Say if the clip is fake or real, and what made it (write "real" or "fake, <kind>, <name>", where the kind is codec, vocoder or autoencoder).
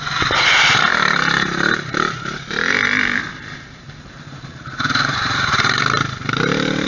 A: fake, vocoder, BigVGAN v2